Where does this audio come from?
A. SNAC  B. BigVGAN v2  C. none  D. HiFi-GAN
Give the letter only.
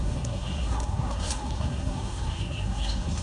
A